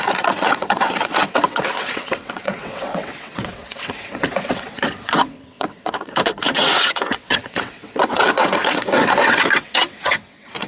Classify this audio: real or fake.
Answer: fake